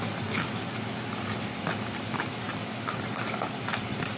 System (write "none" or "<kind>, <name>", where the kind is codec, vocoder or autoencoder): vocoder, BigVGAN v2